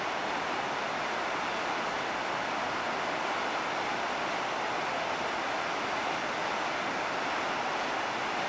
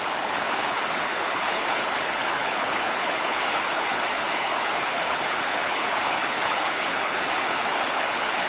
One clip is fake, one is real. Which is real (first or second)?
first